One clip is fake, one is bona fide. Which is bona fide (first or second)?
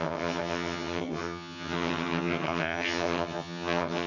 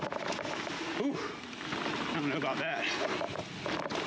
second